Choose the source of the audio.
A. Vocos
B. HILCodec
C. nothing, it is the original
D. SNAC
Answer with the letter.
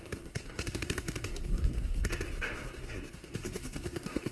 D